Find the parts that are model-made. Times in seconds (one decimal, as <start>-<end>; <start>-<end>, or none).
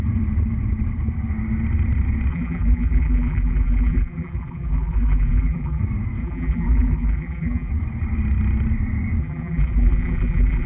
2.3-5.8; 6.2-7.7; 9.2-10.7